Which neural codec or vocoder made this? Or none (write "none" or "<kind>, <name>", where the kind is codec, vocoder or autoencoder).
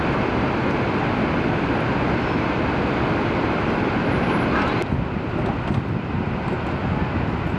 none